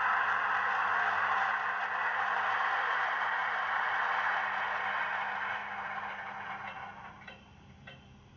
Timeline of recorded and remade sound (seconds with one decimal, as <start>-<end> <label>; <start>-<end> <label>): 0.0-2.1 recorded; 2.1-3.9 remade; 3.9-5.6 recorded; 5.6-6.1 remade; 6.1-8.4 recorded